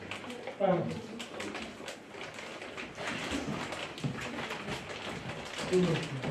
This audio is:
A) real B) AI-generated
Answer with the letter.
A